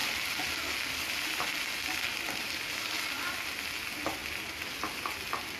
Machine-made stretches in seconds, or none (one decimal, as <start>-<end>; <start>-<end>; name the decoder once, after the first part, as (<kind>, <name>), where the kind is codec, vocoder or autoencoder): none